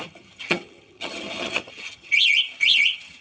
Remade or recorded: remade